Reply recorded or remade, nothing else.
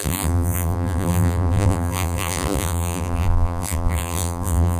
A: remade